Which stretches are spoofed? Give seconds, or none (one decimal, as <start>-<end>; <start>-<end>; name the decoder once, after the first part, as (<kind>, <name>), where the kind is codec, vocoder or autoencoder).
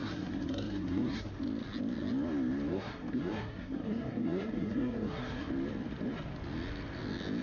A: 0.0-1.3 (codec, SNAC); 2.7-5.5